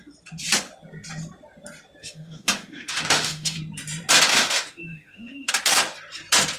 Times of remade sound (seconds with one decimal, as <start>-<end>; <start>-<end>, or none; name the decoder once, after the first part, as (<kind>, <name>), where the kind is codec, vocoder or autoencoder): 2.0-3.6 (autoencoder, DAC-VAE); 4.3-5.5